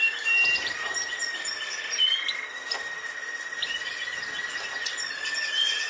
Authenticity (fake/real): real